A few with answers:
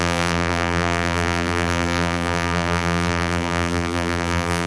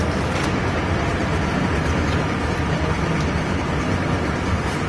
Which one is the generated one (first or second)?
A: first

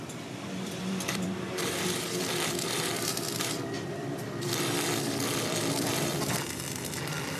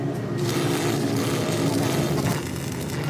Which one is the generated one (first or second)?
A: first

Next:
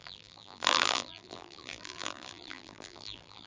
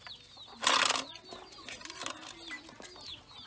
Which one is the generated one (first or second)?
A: first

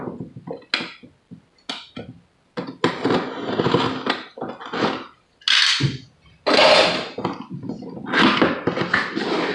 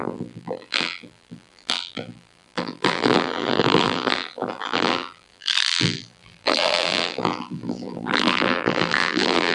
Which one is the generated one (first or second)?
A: second